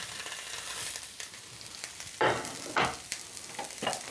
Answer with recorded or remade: recorded